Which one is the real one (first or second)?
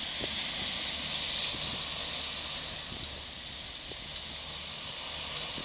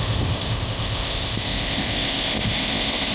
first